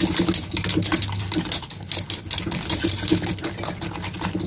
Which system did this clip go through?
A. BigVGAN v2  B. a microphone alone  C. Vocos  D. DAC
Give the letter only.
B